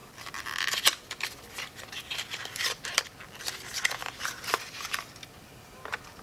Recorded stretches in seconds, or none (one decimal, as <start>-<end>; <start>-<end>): 3.0-4.0; 4.8-6.2